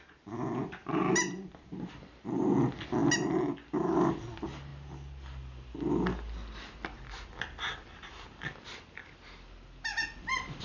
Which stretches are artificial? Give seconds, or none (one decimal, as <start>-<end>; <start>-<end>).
none